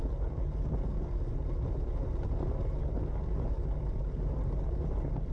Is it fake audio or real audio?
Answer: real